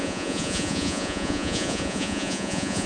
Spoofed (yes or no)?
yes